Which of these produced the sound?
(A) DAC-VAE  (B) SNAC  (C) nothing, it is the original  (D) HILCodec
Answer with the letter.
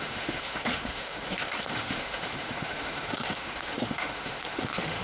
A